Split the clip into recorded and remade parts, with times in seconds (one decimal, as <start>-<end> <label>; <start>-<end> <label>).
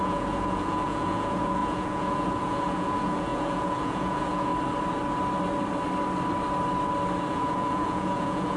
0.0-4.5 remade; 4.5-7.3 recorded; 7.3-8.6 remade